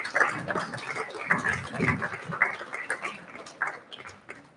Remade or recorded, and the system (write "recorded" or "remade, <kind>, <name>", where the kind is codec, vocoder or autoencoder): recorded